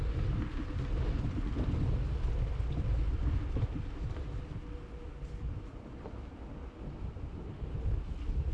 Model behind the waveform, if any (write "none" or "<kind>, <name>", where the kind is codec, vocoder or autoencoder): none